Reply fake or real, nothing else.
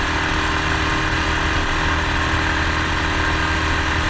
real